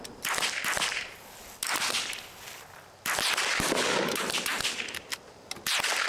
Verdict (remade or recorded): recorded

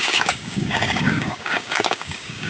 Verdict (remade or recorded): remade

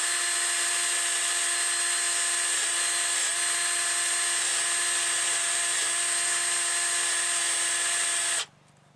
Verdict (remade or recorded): recorded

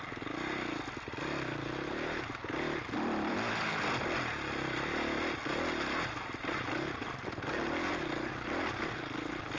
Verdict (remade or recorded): recorded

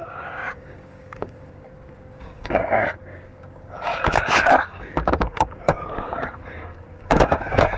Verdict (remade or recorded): remade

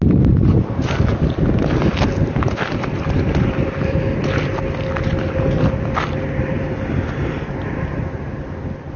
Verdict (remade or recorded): recorded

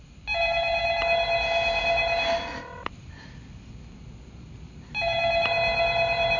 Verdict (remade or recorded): recorded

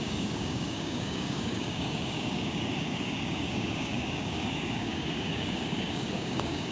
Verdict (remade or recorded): remade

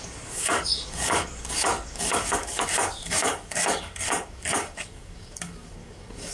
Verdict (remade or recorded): remade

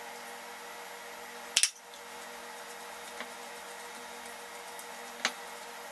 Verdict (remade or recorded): recorded